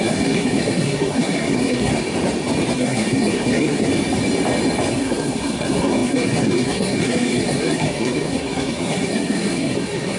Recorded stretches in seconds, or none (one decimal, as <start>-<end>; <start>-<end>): 1.9-2.8; 3.9-4.9